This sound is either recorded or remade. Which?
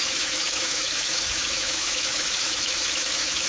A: remade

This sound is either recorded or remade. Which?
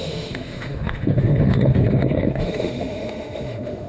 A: remade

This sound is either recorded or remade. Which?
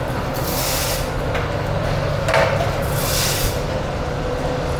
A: recorded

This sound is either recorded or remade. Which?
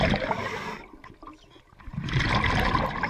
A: recorded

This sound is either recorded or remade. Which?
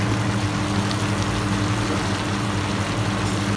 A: recorded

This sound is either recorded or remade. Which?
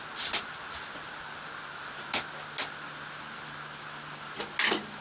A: recorded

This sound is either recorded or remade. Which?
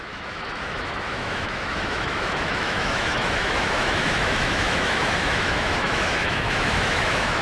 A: remade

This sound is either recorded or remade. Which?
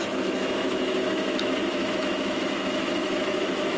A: remade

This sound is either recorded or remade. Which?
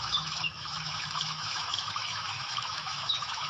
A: remade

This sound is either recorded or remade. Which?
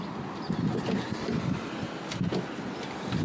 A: recorded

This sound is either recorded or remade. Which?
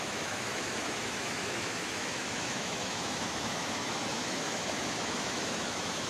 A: remade